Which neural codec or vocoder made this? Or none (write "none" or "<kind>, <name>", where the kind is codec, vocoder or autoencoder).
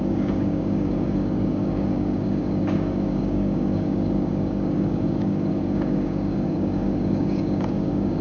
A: codec, DAC